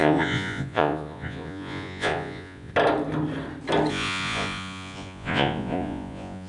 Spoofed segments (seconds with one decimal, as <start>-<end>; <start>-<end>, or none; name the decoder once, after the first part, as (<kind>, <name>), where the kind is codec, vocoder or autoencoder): 0.0-2.7 (vocoder, Vocos); 3.9-6.5